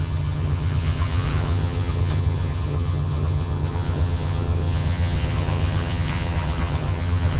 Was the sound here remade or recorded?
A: remade